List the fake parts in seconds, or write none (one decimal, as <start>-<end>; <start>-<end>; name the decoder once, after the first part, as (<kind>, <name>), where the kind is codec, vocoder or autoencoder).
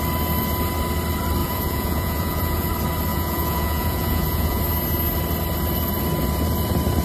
1.4-2.7 (vocoder, Vocos); 3.1-4.6